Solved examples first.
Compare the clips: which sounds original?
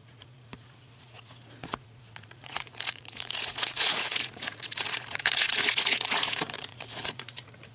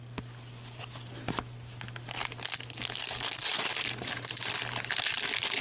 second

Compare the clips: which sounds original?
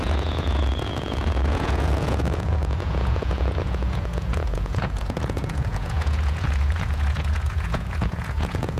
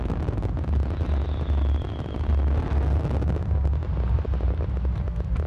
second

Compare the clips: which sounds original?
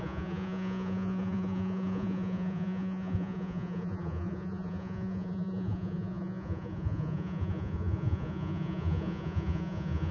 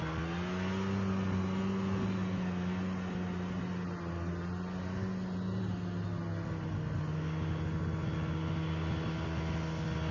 second